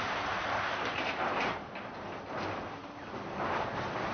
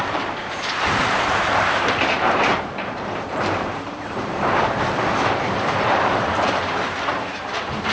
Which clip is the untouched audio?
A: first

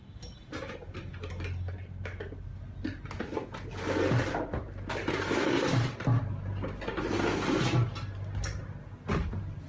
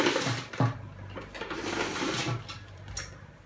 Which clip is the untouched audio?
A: first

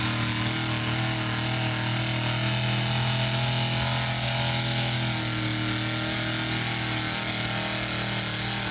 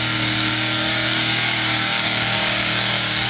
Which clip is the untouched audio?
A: first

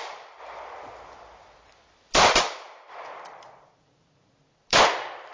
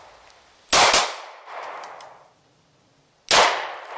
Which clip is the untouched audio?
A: second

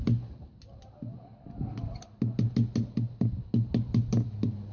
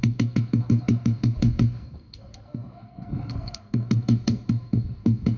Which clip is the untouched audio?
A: first